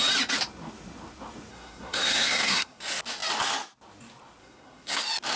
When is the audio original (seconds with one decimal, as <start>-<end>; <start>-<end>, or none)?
0.0-1.5; 2.8-4.4; 5.0-5.4